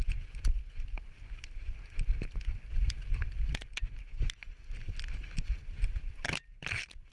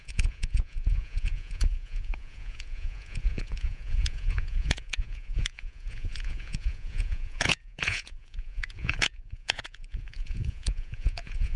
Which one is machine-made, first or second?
second